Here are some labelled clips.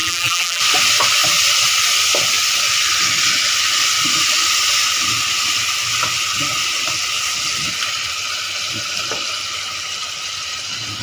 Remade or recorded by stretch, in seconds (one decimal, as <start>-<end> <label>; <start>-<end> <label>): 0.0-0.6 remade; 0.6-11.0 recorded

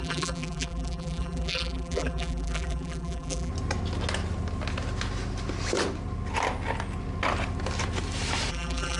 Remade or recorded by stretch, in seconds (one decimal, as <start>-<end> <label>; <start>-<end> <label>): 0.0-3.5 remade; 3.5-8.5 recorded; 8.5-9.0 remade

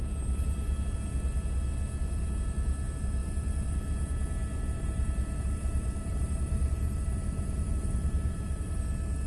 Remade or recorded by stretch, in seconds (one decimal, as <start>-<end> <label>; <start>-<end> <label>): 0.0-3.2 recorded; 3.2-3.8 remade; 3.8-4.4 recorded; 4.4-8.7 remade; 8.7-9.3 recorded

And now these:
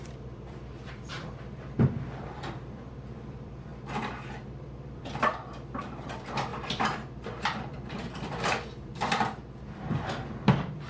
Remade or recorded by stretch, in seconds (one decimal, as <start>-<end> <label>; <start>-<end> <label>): 0.0-3.7 remade; 3.7-4.3 recorded; 4.3-10.9 remade

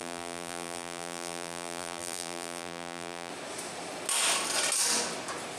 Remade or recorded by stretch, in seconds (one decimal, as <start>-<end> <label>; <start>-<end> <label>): 0.0-3.3 remade; 3.3-5.6 recorded

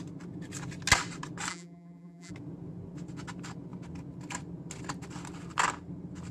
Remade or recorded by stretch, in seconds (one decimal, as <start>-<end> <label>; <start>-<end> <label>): 0.0-1.5 recorded; 1.5-2.3 remade; 2.3-6.3 recorded

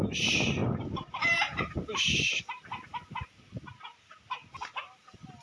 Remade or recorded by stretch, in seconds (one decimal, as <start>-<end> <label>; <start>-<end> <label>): 0.0-0.6 recorded; 0.6-3.8 remade; 3.8-5.4 recorded

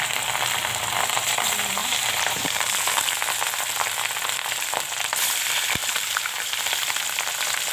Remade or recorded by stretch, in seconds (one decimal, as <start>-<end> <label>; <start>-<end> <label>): 0.0-1.8 recorded; 1.8-3.1 remade; 3.1-5.8 recorded; 5.8-6.5 remade; 6.5-7.7 recorded